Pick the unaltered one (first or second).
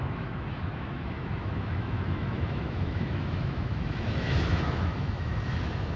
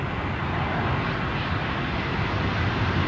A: second